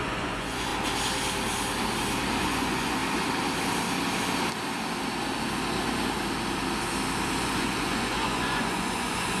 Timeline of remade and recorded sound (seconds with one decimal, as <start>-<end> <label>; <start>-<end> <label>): 0.0-0.7 remade; 0.7-2.4 recorded; 2.4-3.0 remade; 3.0-7.4 recorded; 7.4-9.4 remade